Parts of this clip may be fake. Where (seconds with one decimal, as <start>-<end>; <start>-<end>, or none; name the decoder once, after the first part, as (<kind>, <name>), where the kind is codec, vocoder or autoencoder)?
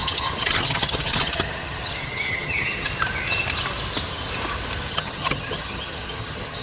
0.0-2.9 (vocoder, HiFi-GAN); 4.9-6.6